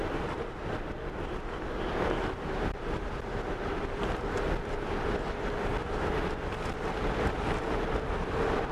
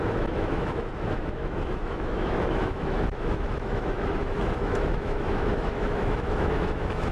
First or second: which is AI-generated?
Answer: second